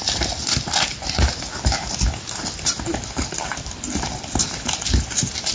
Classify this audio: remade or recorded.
recorded